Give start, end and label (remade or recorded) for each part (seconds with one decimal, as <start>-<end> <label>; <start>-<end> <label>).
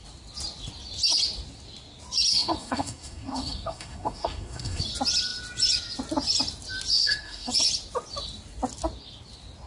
0.0-2.3 recorded; 2.3-4.8 remade; 4.8-6.9 recorded; 6.9-7.5 remade; 7.5-9.7 recorded